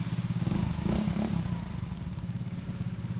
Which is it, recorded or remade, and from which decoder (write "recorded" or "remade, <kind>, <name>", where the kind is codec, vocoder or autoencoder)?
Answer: remade, codec, DAC